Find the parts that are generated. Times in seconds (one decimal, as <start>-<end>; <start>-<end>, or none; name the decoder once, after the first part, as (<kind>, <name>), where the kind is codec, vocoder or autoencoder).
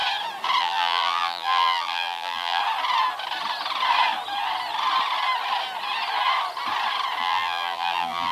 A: 0.6-2.6 (vocoder, BigVGAN v2); 7.2-8.3